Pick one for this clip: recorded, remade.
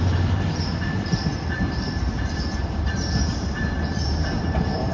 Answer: remade